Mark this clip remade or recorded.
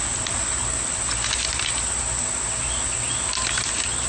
recorded